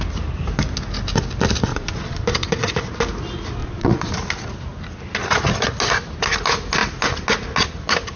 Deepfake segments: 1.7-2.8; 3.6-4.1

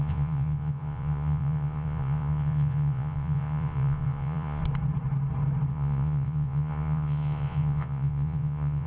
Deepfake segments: 0.0-4.6; 5.7-8.9